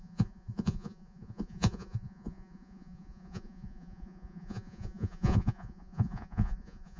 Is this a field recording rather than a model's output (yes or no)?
no